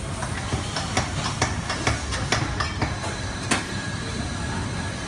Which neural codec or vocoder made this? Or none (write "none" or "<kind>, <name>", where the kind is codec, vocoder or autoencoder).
none